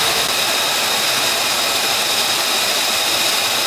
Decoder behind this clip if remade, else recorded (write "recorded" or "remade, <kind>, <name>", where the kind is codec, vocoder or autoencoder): remade, vocoder, BigVGAN v2